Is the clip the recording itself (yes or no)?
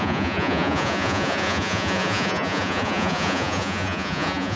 no